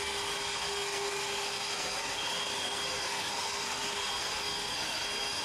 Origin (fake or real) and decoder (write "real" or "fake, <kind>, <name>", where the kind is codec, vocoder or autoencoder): fake, codec, SNAC